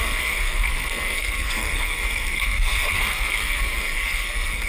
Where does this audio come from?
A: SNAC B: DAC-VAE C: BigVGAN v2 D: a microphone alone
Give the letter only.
A